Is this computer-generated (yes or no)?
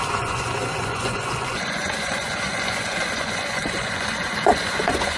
yes